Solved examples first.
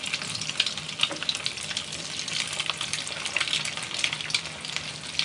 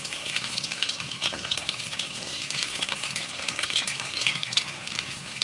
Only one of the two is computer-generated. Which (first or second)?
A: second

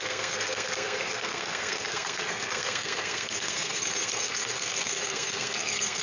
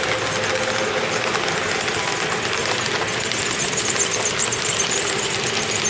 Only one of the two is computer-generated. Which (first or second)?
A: first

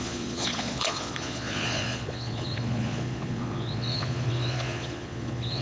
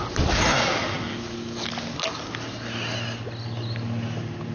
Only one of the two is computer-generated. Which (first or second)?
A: first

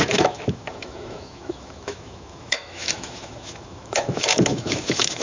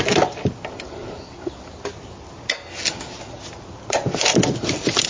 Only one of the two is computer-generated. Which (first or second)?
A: first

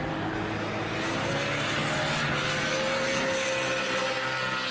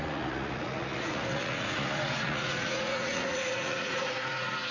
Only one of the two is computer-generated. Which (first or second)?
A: second